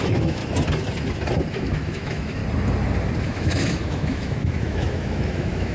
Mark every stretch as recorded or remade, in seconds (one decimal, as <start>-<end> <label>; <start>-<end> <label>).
0.0-0.4 remade; 0.4-1.5 recorded; 1.5-2.4 remade; 2.4-3.2 recorded; 3.2-5.7 remade